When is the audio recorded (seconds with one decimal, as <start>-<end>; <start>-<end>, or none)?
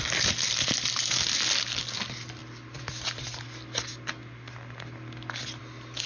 0.0-6.1